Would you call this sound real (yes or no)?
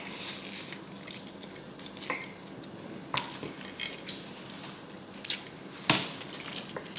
yes